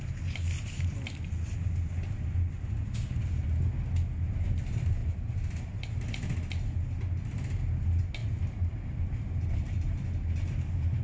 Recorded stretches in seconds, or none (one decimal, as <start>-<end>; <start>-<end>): 0.0-5.0; 6.0-11.0